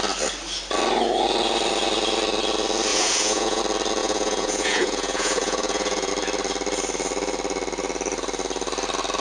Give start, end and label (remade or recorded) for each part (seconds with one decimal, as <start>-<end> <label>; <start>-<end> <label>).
0.0-2.9 recorded; 2.9-3.6 remade; 3.6-4.0 recorded; 4.0-6.1 remade; 6.1-9.2 recorded